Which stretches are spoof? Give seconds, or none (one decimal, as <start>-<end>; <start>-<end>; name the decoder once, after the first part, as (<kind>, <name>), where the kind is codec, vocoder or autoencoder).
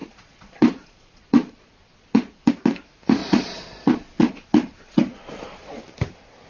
0.0-2.5 (vocoder, Vocos); 3.2-5.8